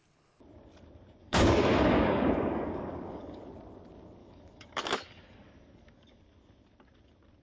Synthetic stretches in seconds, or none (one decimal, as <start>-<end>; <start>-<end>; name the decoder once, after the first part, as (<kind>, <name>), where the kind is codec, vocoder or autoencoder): 1.2-3.5 (codec, DAC); 4.2-6.2